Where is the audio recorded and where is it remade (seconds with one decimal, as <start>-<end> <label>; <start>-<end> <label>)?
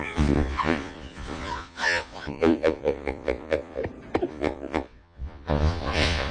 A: 0.0-3.8 remade; 3.8-4.3 recorded; 4.3-6.3 remade